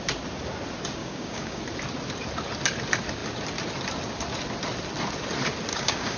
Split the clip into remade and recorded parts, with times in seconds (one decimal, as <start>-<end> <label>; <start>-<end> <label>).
0.0-1.0 recorded; 1.0-1.6 remade; 1.6-5.7 recorded; 5.7-6.2 remade